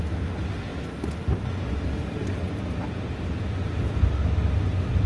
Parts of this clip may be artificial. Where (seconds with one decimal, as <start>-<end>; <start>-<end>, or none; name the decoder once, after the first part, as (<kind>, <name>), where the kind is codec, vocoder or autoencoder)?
none